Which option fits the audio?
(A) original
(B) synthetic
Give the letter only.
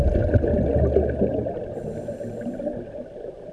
A